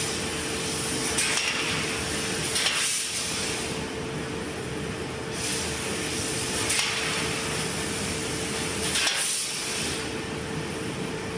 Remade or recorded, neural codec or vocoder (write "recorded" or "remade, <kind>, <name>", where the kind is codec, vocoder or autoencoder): recorded